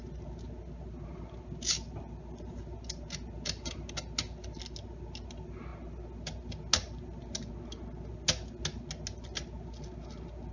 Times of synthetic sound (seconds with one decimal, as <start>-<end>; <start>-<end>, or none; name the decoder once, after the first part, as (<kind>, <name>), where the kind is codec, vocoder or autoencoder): none